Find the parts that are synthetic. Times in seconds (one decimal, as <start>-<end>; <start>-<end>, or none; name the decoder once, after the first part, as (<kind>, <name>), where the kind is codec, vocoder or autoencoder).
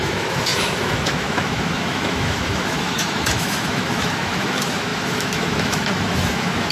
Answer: 0.0-6.7 (autoencoder, DAC-VAE)